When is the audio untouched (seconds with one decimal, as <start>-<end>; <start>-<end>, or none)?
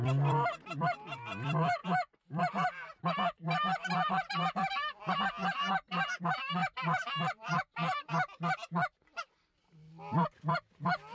none